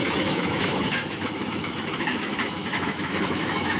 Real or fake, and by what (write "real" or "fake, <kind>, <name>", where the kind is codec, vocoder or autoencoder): fake, autoencoder, DAC-VAE